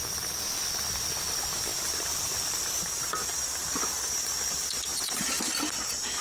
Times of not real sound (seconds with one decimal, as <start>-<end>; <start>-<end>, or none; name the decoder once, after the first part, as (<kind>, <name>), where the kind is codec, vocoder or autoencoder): none